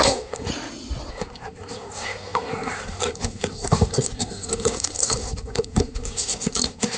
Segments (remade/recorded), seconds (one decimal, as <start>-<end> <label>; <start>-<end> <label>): 0.0-0.5 remade; 0.5-1.1 recorded; 1.1-7.0 remade